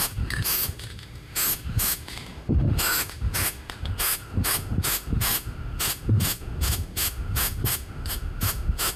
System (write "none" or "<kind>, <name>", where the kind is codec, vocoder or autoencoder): autoencoder, DAC-VAE